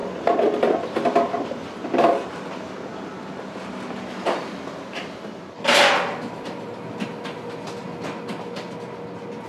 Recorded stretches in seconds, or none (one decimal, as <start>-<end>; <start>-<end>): 2.0-9.5